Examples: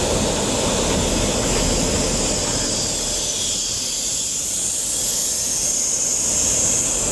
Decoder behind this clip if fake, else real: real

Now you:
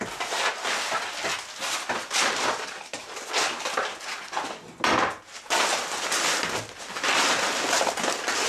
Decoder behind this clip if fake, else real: real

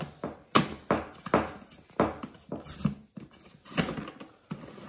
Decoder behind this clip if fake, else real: real